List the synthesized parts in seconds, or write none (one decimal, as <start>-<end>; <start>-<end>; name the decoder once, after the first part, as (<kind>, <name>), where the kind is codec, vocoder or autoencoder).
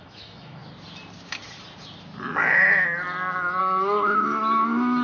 0.0-0.6 (autoencoder, DAC-VAE); 3.6-5.0